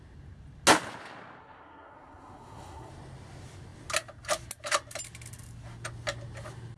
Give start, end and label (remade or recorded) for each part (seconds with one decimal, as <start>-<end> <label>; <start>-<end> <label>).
0.0-1.4 recorded; 1.4-2.9 remade; 2.9-6.8 recorded